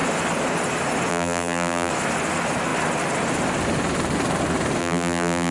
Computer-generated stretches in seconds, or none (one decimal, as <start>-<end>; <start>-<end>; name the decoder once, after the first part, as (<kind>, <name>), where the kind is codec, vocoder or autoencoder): 1.1-1.9 (vocoder, BigVGAN v2); 4.8-5.5